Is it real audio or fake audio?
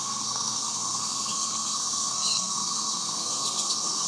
fake